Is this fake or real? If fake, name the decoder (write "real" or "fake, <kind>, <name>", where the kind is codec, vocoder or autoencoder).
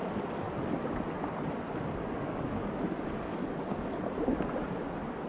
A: real